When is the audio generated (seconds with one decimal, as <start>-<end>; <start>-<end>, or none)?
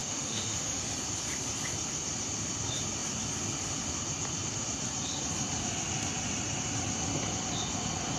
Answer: 0.0-0.8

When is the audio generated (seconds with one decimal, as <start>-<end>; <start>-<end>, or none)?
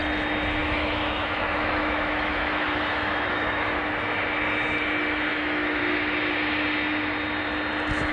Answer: 0.6-3.9; 5.3-5.8